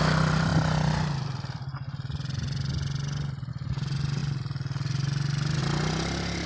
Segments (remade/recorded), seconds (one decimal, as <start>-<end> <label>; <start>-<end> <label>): 0.0-6.5 recorded